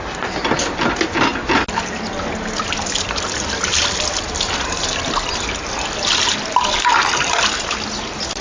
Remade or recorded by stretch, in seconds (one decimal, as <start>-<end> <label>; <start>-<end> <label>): 0.0-8.4 recorded